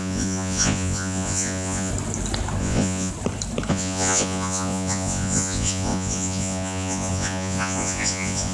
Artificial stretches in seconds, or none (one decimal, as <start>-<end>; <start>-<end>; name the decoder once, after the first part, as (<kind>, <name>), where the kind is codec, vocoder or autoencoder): 0.0-1.9 (vocoder, Vocos); 2.6-3.1; 3.7-8.5